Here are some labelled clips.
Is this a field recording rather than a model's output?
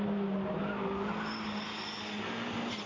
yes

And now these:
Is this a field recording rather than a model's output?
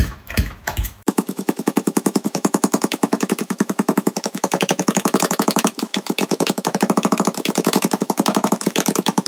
no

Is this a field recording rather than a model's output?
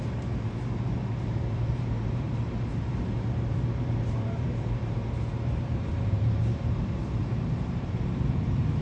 no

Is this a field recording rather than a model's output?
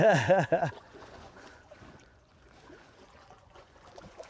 no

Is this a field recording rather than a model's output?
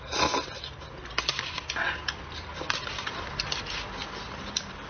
yes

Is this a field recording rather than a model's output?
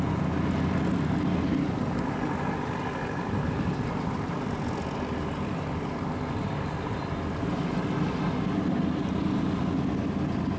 yes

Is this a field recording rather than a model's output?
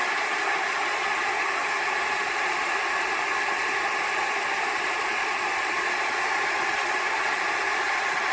yes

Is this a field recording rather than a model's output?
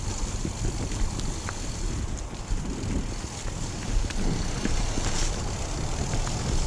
yes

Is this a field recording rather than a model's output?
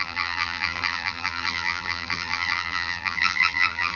no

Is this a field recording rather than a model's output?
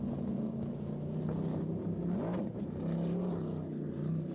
yes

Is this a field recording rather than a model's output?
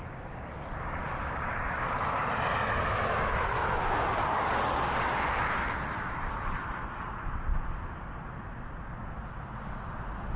yes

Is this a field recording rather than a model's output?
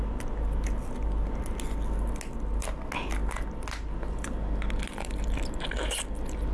yes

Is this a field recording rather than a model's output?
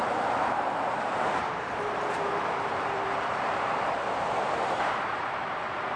no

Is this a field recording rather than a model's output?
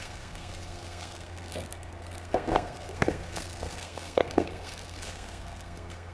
no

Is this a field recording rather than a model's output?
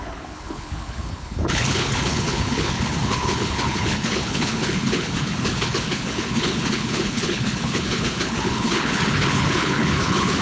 no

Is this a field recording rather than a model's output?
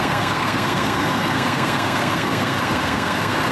no